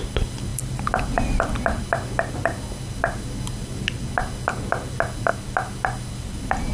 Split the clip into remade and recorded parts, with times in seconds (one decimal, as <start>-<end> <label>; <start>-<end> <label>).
0.0-6.7 recorded